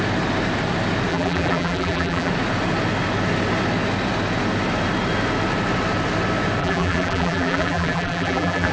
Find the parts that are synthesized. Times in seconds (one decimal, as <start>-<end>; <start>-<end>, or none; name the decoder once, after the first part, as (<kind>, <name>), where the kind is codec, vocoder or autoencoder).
1.1-2.3 (vocoder, BigVGAN v2); 6.6-8.7